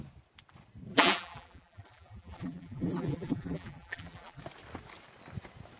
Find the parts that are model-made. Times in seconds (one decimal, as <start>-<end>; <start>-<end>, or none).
0.9-4.4